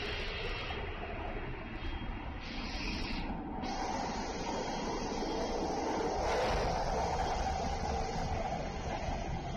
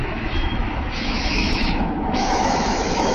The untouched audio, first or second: first